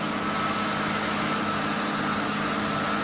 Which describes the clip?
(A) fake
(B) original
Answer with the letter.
B